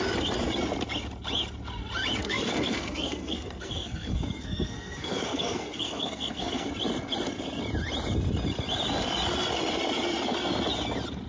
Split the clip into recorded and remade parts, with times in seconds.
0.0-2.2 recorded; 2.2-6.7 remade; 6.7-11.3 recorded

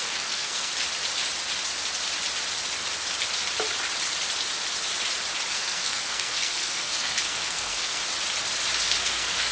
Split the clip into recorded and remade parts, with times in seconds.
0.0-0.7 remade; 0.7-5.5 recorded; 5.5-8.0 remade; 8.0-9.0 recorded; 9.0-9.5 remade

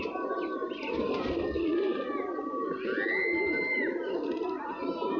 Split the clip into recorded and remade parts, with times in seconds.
0.0-5.2 recorded

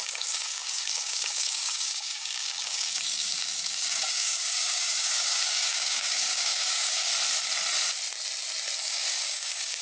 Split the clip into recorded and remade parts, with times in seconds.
0.0-7.1 remade; 7.1-8.8 recorded; 8.8-9.8 remade